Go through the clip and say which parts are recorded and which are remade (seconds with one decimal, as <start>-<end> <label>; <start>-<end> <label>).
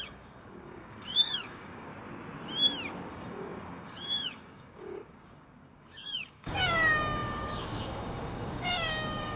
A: 0.0-1.9 remade; 1.9-3.1 recorded; 3.1-9.4 remade